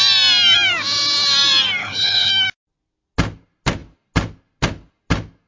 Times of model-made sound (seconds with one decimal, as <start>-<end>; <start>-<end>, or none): 1.8-2.3